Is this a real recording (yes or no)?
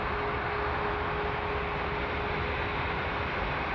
yes